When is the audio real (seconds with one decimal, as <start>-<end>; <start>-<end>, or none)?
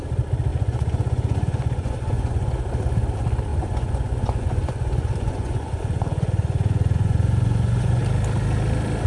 0.0-0.5; 2.7-3.5; 8.0-9.1